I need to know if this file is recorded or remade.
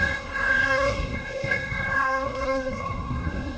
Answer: remade